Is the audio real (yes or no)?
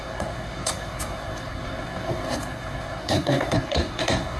no